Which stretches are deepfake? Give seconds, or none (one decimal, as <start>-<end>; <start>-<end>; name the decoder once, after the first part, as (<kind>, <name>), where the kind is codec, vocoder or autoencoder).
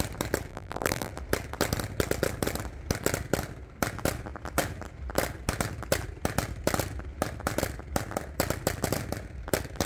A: 0.5-1.1 (vocoder, BigVGAN v2)